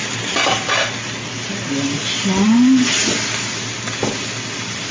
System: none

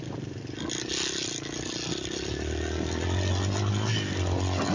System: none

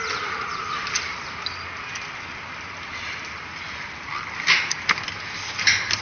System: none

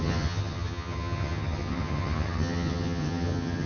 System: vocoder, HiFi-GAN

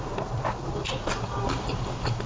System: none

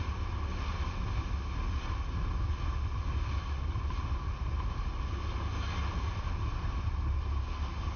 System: none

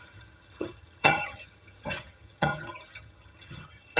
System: vocoder, HiFi-GAN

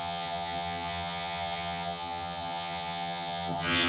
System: vocoder, HiFi-GAN